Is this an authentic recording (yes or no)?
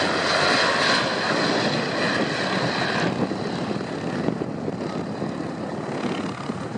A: yes